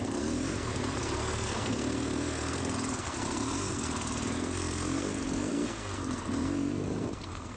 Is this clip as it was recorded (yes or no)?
no